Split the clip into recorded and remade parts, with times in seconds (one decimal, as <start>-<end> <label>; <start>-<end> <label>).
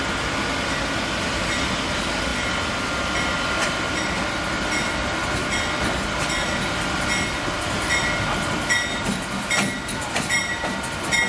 0.0-11.3 recorded